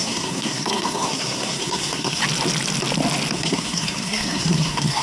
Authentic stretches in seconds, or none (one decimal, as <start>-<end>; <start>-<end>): 2.2-3.3

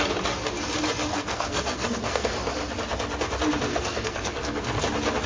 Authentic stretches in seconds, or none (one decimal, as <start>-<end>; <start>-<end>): 0.0-1.1; 2.3-3.7; 4.8-5.3

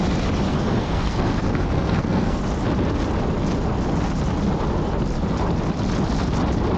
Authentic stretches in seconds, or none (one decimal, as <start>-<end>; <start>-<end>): 0.0-0.5; 2.4-6.8

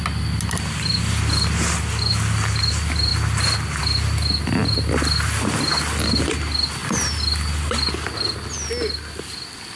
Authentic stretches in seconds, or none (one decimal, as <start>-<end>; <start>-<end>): 0.0-9.8

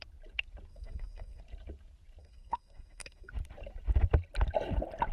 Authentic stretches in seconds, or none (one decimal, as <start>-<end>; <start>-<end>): 0.0-0.7; 1.4-2.2; 3.3-5.1